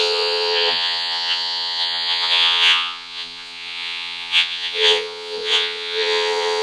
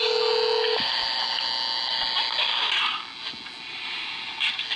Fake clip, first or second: first